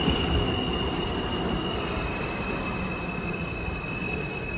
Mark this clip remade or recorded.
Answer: recorded